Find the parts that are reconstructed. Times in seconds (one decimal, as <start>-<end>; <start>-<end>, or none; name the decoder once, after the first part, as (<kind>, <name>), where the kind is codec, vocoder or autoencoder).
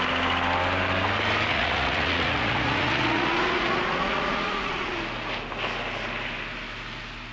1.5-5.0 (vocoder, Vocos)